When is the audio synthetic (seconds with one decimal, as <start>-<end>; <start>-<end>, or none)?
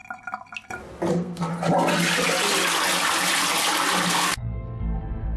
1.1-1.5; 4.1-5.4